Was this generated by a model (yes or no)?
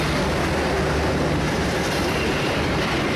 yes